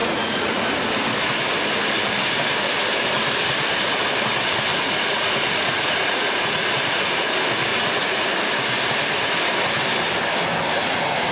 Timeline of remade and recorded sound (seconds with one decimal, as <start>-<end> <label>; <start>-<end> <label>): 0.0-0.6 remade; 0.6-4.7 recorded; 4.7-7.2 remade; 7.2-7.7 recorded; 7.7-8.3 remade; 8.3-11.3 recorded